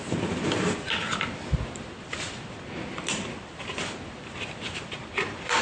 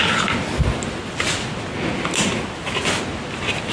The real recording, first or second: second